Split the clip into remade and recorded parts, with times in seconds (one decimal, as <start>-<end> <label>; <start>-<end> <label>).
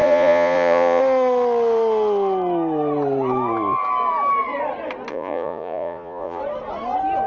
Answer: 0.0-1.0 remade; 1.0-5.1 recorded; 5.1-6.4 remade; 6.4-7.3 recorded